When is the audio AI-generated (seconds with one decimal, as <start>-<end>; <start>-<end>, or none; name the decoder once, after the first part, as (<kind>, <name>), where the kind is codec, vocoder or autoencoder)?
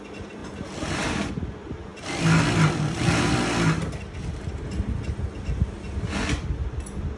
none